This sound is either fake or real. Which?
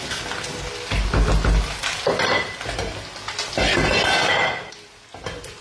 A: real